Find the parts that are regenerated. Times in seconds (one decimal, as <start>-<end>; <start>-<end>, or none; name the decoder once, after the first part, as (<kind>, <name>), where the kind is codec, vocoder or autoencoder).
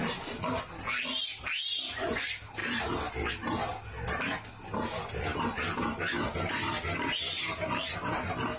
none